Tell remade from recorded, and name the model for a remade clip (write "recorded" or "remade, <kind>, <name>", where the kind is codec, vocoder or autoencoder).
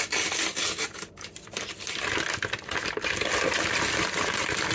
recorded